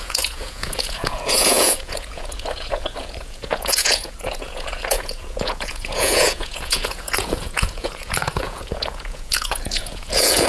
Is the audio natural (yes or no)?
no